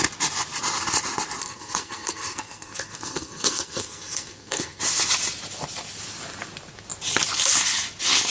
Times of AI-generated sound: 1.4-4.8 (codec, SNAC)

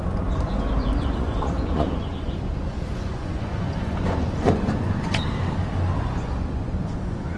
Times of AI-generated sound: 0.0-5.2 (vocoder, Vocos); 6.0-7.4

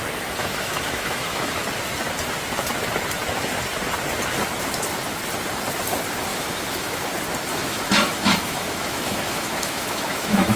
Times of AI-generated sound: 0.4-1.6 (autoencoder, DAC-VAE); 6.3-7.0; 7.5-10.6